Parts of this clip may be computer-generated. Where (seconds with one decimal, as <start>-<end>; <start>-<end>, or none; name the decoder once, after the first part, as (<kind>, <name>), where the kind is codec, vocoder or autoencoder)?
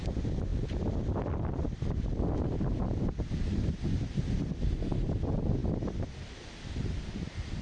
none